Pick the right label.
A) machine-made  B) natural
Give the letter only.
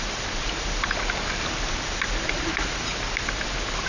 B